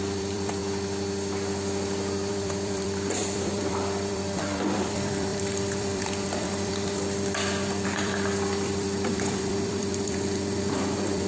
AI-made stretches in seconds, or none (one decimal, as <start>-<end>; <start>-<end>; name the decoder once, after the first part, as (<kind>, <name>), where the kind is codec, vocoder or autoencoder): 0.0-0.6 (vocoder, BigVGAN v2); 2.3-11.3